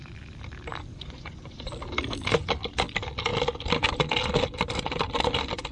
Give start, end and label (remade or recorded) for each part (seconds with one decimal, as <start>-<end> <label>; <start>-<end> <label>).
0.0-0.9 recorded; 0.9-1.7 remade; 1.7-5.7 recorded